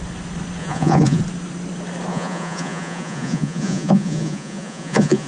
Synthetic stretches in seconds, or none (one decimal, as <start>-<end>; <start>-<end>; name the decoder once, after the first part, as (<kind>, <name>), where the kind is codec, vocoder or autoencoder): 0.6-1.2 (vocoder, Vocos); 2.1-5.3